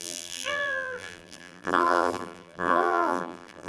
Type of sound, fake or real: fake